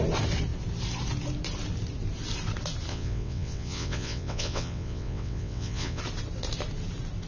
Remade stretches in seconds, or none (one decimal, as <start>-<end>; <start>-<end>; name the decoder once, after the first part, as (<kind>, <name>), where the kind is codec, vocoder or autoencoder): 2.9-6.0 (vocoder, WaveNeXt)